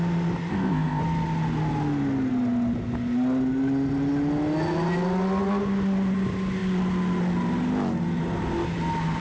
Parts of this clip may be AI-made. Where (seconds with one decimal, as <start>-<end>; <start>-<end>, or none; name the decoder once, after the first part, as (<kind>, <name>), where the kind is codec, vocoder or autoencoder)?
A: 0.5-1.0 (codec, ZipCodec)